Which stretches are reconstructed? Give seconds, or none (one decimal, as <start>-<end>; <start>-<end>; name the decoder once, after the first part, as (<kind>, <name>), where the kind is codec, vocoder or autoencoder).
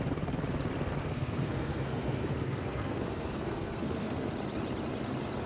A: 1.0-4.3 (codec, SNAC)